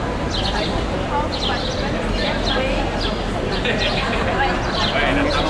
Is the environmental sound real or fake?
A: real